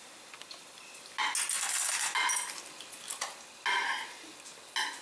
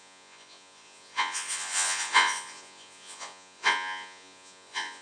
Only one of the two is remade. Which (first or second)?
second